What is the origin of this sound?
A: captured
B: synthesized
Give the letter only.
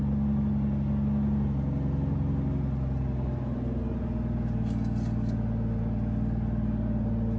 A